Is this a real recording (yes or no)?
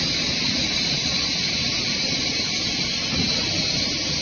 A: yes